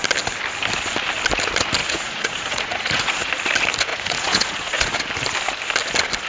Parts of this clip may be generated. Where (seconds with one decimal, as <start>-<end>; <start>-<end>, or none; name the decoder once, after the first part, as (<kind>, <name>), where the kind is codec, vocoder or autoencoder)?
1.8-3.3 (vocoder, Vocos); 3.9-5.0